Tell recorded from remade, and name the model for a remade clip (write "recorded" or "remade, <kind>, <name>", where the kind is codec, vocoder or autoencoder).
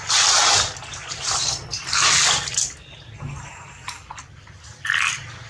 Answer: recorded